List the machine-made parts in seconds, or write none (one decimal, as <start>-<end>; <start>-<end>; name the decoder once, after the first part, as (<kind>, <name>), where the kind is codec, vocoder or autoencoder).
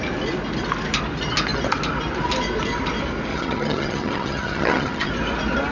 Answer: 3.3-5.1 (vocoder, HiFi-GAN)